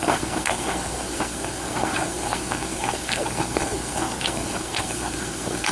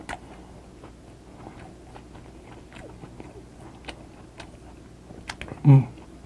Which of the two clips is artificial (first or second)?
first